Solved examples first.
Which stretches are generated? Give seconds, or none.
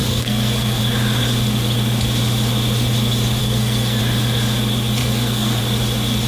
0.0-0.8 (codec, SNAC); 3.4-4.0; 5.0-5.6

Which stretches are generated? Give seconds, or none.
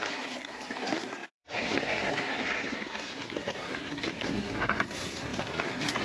0.0-6.0 (codec, SNAC)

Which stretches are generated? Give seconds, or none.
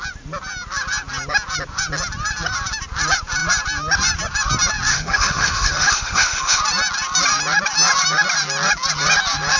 4.9-6.6 (autoencoder, DAC-VAE)